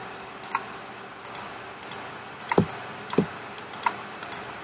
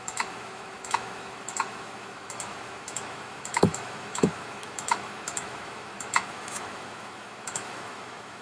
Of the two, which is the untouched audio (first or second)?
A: first